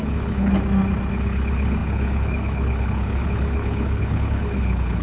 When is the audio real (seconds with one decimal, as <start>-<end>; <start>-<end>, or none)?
0.5-1.1

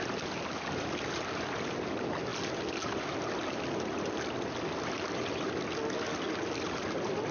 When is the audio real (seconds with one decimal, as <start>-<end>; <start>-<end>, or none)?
0.0-7.3

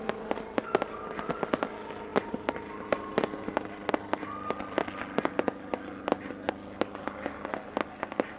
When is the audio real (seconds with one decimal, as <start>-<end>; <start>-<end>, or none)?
0.0-8.4

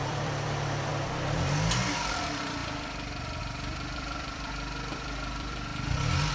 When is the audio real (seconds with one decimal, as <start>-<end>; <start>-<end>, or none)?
0.9-1.9; 5.7-6.3

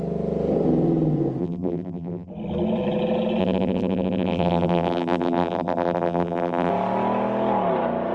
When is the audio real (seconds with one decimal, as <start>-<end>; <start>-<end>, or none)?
0.0-1.4; 2.3-3.4; 6.7-8.1

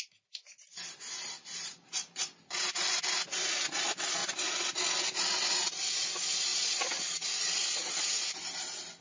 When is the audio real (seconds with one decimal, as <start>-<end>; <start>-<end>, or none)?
0.0-9.0

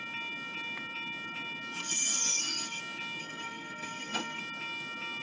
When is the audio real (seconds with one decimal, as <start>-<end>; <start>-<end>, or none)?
0.0-1.8; 2.8-3.2; 4.4-5.2